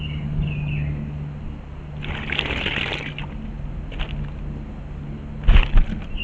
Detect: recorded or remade recorded